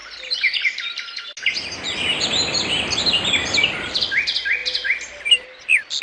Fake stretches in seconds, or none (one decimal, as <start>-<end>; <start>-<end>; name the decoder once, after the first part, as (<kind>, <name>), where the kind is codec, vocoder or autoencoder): 0.0-1.2 (vocoder, BigVGAN v2); 3.4-4.0